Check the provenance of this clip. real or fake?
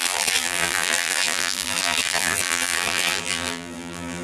fake